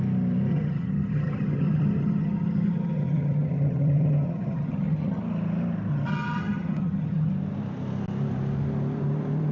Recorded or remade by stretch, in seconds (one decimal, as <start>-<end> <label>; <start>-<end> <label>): 0.0-0.5 recorded; 0.5-5.2 remade; 5.2-5.9 recorded; 5.9-7.3 remade; 7.3-9.5 recorded